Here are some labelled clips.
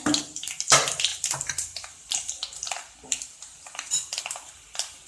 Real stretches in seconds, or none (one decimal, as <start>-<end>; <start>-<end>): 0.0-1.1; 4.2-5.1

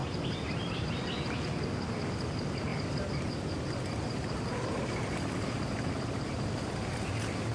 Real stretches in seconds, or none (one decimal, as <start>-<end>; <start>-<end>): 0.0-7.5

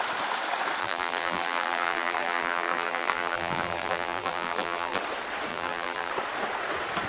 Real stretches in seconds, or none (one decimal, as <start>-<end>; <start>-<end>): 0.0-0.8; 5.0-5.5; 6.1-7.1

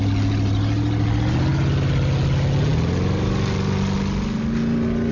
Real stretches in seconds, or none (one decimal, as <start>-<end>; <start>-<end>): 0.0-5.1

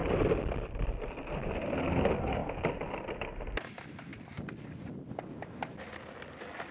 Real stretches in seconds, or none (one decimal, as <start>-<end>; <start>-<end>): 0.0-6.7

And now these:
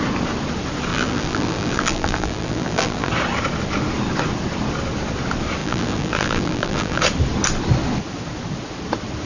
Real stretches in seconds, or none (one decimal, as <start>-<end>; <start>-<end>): 0.0-0.9; 3.1-5.6; 7.0-9.3